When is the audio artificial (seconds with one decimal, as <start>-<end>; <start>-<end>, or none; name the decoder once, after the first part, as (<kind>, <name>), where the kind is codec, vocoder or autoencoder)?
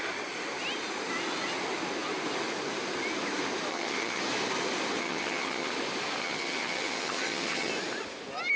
3.7-4.2 (vocoder, HiFi-GAN); 5.0-5.7; 6.2-7.7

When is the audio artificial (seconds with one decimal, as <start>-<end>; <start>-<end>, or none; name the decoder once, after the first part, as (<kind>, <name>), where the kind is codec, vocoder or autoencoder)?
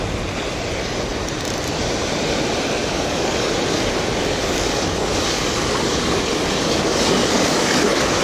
2.8-3.5 (codec, DAC); 4.2-8.2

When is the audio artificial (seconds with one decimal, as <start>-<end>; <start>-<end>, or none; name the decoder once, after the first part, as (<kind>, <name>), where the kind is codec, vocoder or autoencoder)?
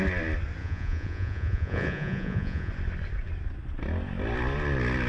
0.6-2.7 (vocoder, Vocos)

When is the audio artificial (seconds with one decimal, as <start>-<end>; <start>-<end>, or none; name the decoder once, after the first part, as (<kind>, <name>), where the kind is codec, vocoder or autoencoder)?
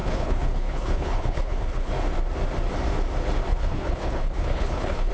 0.0-1.9 (codec, HILCodec); 3.5-5.1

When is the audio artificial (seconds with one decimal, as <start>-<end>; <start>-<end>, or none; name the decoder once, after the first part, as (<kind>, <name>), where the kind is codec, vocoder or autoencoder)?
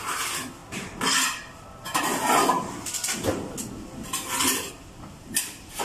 none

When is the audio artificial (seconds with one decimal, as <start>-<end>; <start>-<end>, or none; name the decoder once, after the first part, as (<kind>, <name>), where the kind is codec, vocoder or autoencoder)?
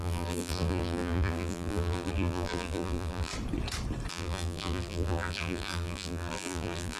0.0-3.3 (vocoder, BigVGAN v2); 4.1-7.0